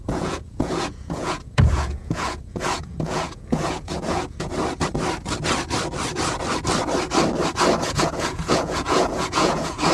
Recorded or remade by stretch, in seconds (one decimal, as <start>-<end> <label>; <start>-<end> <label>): 0.0-4.5 remade; 4.5-7.8 recorded; 7.8-9.9 remade